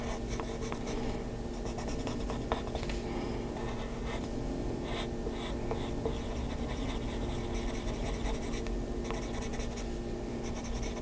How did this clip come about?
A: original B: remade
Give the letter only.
A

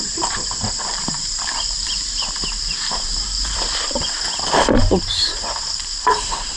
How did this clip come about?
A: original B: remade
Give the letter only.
B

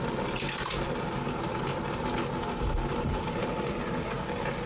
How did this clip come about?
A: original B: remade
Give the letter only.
A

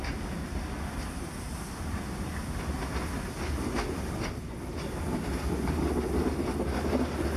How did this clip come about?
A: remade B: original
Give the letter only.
B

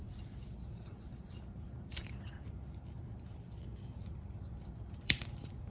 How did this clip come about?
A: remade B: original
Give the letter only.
A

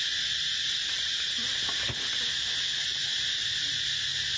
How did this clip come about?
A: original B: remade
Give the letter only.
A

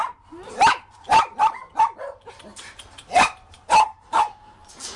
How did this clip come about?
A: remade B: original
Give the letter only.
A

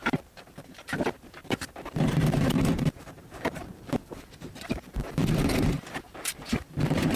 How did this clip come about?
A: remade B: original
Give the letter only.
A